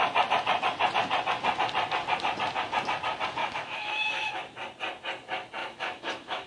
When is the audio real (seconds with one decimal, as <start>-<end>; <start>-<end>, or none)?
0.0-3.4; 4.3-5.6